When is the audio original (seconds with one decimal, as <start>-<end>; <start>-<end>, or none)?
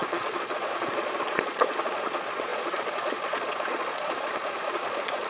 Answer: none